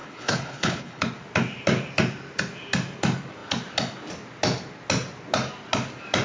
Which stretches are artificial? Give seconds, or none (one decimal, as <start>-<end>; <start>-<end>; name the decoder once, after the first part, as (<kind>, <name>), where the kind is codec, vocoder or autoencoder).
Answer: 0.0-1.0 (codec, HILCodec)